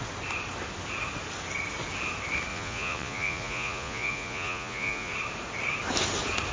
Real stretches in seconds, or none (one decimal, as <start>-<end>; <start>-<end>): 0.0-2.5; 5.1-6.5